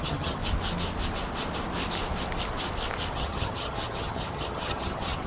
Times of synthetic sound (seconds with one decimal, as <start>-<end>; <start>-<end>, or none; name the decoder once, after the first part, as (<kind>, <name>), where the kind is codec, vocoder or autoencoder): 0.0-0.4 (vocoder, HiFi-GAN); 3.1-5.3